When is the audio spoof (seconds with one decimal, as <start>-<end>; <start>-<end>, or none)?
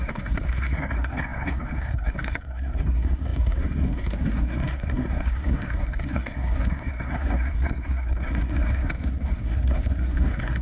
0.0-10.6